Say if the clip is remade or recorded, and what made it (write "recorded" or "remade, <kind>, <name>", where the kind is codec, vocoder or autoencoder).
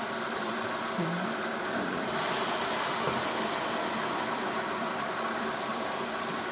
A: remade, vocoder, BigVGAN v2